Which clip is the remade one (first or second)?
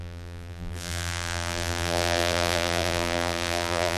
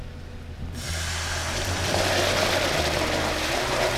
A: first